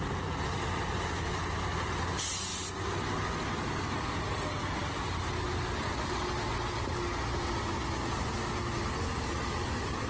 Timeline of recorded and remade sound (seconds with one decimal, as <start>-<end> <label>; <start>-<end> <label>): 0.0-10.1 recorded